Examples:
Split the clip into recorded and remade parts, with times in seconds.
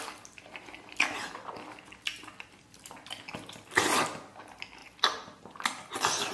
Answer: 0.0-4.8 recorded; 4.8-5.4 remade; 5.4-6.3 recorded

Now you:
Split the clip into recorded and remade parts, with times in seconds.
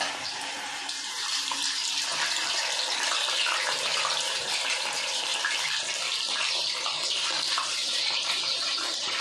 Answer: 0.0-2.1 remade; 2.1-3.6 recorded; 3.6-5.3 remade; 5.3-6.5 recorded; 6.5-9.2 remade